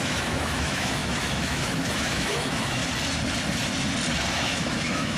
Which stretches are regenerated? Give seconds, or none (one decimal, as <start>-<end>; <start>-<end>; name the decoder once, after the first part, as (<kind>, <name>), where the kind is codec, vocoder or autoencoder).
0.0-2.8 (autoencoder, DAC-VAE); 4.3-5.2